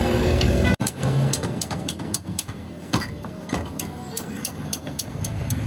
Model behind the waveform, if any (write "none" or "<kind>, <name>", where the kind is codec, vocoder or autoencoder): codec, SNAC